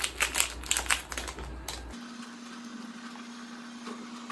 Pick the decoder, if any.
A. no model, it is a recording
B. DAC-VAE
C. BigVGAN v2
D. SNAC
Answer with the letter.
A